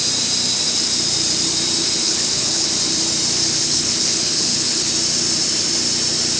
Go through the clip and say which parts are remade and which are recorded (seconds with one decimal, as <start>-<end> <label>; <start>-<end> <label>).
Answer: 0.0-2.0 recorded; 2.0-2.7 remade; 2.7-3.6 recorded; 3.6-4.9 remade; 4.9-6.4 recorded